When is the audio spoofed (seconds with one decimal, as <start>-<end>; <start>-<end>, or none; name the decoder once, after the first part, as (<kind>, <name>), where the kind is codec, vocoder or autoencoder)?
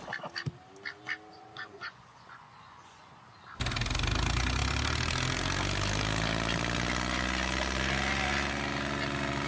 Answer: 1.3-3.2 (vocoder, Vocos)